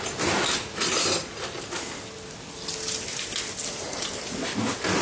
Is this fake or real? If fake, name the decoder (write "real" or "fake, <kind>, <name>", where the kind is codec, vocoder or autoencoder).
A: real